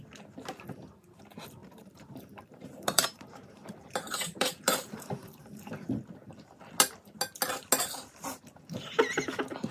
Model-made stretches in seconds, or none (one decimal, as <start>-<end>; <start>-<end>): 1.6-4.9